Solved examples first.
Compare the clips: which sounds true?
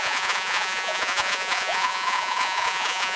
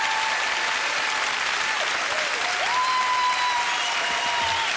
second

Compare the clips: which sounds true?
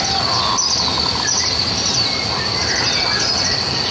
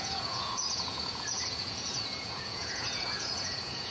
first